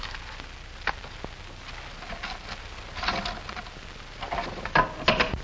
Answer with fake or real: real